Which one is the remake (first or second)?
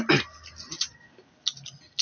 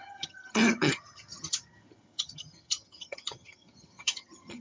second